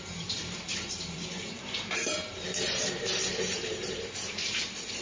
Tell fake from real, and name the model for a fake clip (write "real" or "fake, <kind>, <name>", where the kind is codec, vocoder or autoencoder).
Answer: fake, vocoder, BigVGAN v2